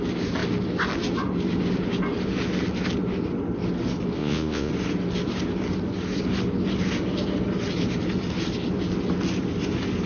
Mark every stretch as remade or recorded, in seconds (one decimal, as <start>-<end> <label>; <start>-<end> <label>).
0.0-4.2 recorded; 4.2-4.7 remade; 4.7-10.1 recorded